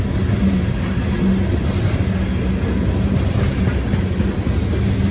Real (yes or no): yes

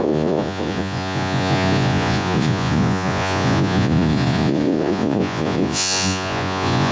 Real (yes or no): no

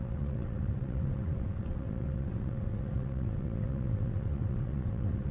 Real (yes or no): no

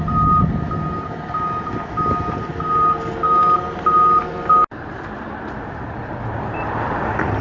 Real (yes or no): yes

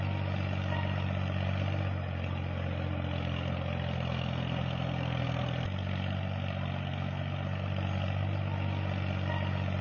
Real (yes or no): yes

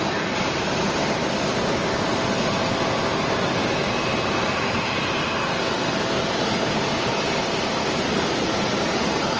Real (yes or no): yes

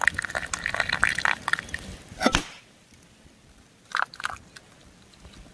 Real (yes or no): yes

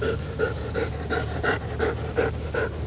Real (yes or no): yes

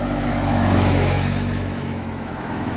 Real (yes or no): no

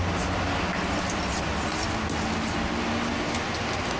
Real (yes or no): yes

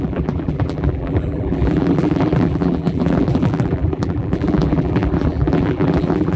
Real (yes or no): no